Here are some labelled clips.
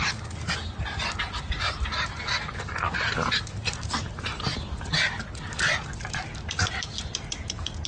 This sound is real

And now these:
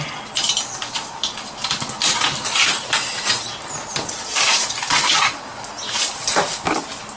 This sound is real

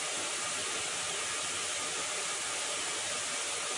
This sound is real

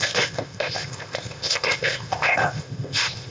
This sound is fake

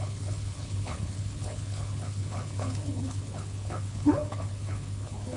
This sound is fake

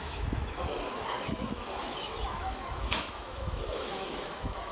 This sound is fake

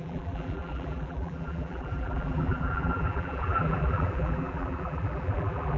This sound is fake